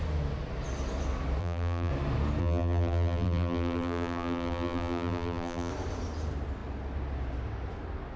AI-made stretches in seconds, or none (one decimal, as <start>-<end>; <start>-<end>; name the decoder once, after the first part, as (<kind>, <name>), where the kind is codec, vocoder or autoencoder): 1.4-1.9 (vocoder, BigVGAN v2); 2.4-5.7